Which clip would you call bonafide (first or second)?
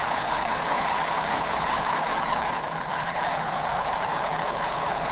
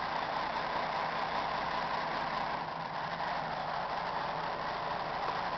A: second